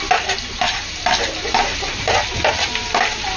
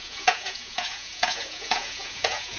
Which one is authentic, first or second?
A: first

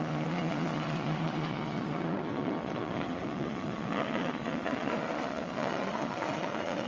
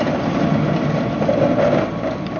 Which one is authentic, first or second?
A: second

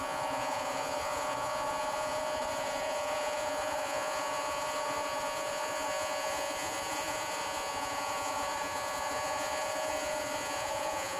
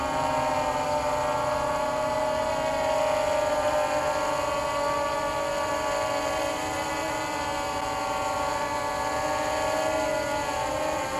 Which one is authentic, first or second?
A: second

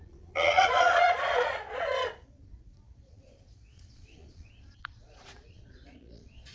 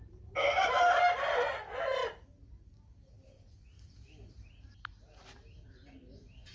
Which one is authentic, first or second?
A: second